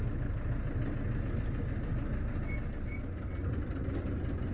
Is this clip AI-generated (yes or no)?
no